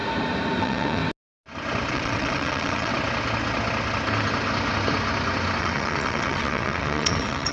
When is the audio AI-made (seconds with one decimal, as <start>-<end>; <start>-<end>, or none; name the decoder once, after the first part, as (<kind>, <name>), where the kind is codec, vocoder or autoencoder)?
0.6-1.0 (vocoder, WaveNeXt); 1.9-2.9; 5.6-7.5